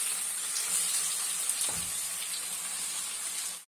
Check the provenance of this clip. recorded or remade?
recorded